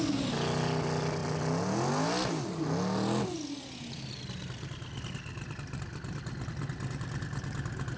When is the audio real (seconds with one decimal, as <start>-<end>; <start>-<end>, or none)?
0.0-8.0